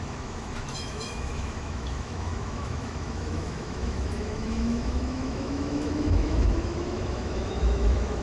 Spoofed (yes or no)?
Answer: yes